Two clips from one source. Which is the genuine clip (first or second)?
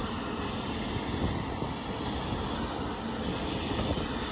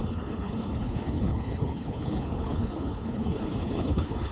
first